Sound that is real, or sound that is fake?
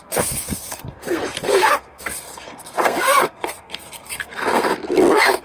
fake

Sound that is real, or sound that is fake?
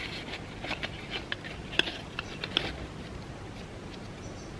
real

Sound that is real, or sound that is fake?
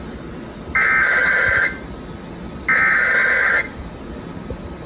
real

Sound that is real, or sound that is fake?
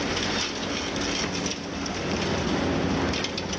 real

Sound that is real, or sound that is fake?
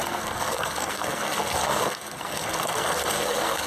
fake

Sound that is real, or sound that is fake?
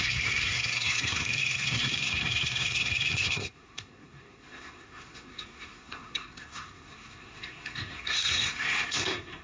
fake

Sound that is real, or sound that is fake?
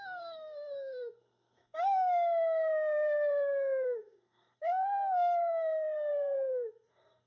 fake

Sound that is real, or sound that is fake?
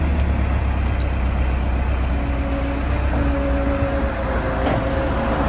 real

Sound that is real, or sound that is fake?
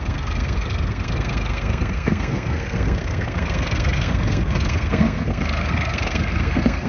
fake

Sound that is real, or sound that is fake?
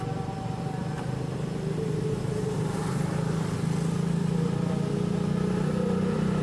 real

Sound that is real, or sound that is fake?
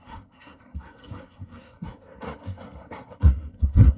fake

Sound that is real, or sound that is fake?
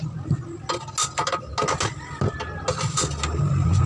real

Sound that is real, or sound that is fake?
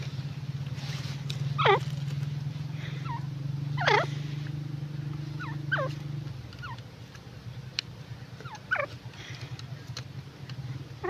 real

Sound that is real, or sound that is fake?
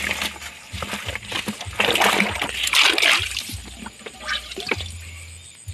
real